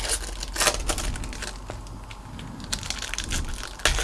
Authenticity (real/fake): real